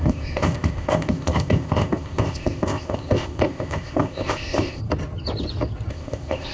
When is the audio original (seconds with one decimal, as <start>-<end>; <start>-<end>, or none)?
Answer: 4.8-5.9